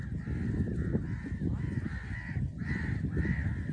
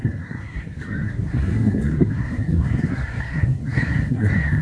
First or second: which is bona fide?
first